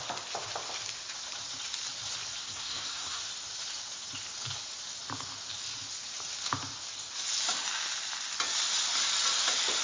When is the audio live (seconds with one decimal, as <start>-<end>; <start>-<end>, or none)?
0.0-2.4; 3.2-9.8